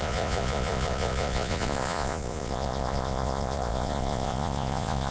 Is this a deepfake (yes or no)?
yes